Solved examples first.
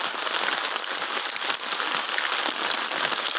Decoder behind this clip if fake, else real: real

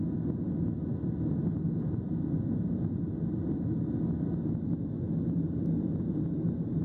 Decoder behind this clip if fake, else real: real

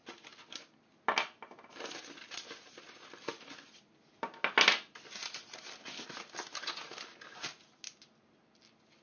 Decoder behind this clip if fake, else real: real